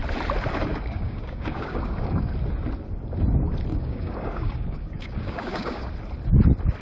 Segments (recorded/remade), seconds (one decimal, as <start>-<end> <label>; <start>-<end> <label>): 0.0-0.7 recorded; 0.7-2.3 remade; 2.3-3.7 recorded; 3.7-5.9 remade; 5.9-6.8 recorded

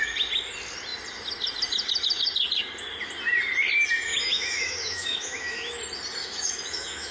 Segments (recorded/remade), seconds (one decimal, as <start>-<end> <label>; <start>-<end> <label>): 0.0-4.1 recorded; 4.1-5.8 remade; 5.8-6.2 recorded; 6.2-7.1 remade

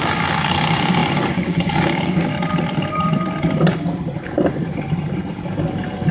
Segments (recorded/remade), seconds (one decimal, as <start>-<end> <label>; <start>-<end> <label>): 0.0-2.3 remade; 2.3-6.1 recorded